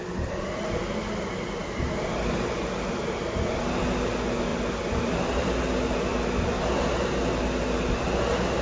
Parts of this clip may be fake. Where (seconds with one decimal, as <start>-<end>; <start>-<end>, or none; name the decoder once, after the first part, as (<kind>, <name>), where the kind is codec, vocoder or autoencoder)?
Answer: 1.6-3.2 (vocoder, BigVGAN v2); 4.5-5.6; 6.1-6.7